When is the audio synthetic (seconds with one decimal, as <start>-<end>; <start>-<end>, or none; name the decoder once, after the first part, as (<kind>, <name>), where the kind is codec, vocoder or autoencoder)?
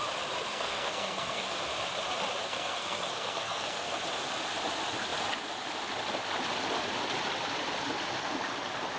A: 0.5-1.6 (codec, SNAC); 2.4-4.0